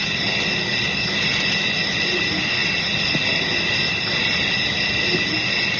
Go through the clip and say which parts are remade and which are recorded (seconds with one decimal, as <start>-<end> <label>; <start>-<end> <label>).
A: 0.0-5.8 recorded